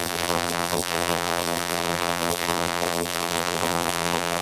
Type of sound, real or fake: fake